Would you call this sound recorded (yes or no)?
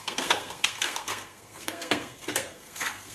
no